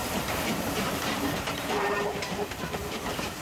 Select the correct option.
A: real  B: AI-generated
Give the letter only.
B